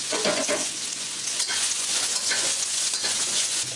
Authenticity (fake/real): fake